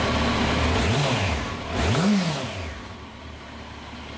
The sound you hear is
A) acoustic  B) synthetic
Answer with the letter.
A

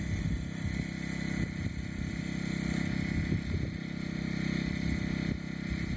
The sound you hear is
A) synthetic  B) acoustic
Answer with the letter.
B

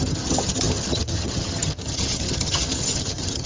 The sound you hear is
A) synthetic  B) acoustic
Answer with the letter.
A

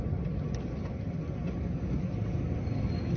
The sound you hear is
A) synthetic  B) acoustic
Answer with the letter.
B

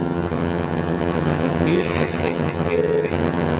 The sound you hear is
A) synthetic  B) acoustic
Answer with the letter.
A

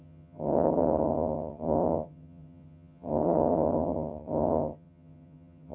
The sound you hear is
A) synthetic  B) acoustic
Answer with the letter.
A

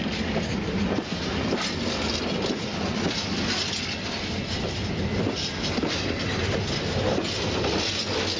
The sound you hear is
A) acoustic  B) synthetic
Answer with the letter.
A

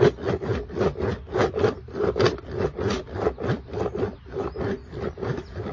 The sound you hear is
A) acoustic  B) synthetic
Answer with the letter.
A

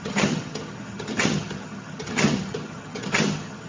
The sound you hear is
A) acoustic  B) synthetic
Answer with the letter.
B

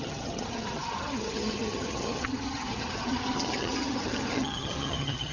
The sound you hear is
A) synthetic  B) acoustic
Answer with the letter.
A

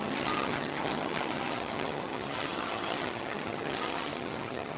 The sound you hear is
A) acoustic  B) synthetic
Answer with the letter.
B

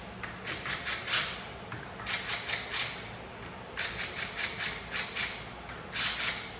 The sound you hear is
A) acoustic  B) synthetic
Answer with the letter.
A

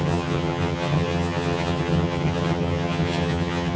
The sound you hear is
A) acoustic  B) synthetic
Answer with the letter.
B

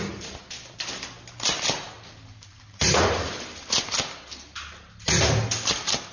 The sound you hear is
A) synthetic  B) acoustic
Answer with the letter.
B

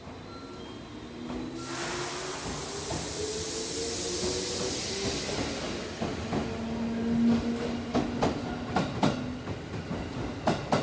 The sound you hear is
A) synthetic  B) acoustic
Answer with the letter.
B